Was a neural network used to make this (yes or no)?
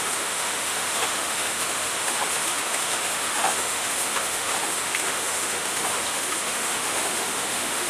yes